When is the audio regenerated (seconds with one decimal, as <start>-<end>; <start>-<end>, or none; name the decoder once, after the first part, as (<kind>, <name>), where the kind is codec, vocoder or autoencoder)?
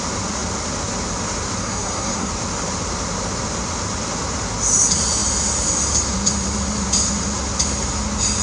1.6-2.3 (codec, SNAC)